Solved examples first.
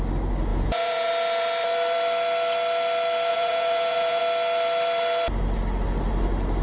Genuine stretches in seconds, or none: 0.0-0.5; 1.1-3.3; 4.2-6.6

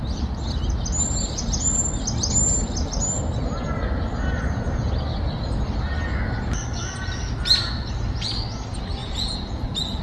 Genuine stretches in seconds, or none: 0.0-9.0

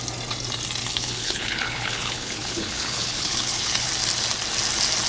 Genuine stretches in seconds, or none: 0.0-0.8; 3.9-5.1